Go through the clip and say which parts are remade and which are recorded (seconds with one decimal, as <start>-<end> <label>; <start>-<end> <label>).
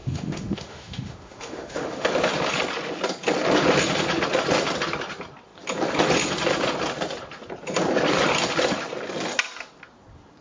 0.0-2.1 remade; 2.1-10.4 recorded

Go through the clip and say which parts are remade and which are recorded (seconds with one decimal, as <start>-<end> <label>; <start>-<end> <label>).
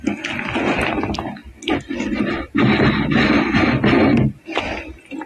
0.0-5.3 recorded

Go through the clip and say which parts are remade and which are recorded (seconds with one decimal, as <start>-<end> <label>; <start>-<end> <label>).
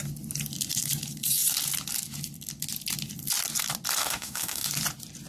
0.0-4.0 recorded; 4.0-4.7 remade; 4.7-5.3 recorded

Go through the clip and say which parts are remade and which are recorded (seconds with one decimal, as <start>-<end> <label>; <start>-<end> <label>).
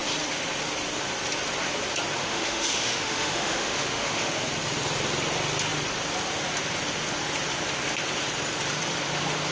0.0-2.2 recorded; 2.2-4.3 remade; 4.3-9.5 recorded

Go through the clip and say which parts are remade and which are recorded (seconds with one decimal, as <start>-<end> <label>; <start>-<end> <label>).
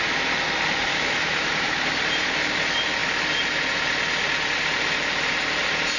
0.0-0.9 recorded; 0.9-1.8 remade; 1.8-6.0 recorded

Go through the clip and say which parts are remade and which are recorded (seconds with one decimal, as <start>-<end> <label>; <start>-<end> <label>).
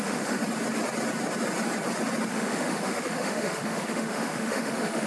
0.0-0.4 remade; 0.4-2.3 recorded; 2.3-5.1 remade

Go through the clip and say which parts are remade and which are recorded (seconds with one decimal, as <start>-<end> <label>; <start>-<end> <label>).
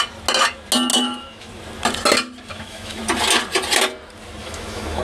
0.0-0.9 recorded; 0.9-1.5 remade; 1.5-2.5 recorded; 2.5-3.0 remade; 3.0-4.4 recorded; 4.4-5.0 remade